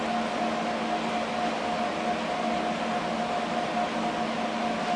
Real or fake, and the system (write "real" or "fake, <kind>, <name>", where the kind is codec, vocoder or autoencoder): real